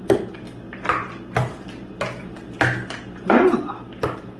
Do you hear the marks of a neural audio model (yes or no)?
no